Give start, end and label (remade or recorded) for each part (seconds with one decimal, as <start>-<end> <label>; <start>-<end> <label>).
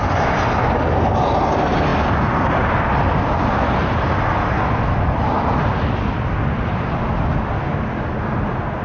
0.0-8.8 recorded